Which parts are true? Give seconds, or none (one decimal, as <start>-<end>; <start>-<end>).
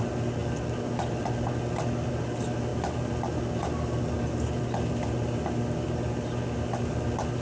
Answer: 0.0-7.4